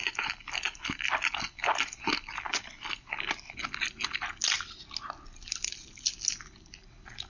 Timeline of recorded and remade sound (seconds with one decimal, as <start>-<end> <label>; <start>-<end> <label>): 0.0-7.3 recorded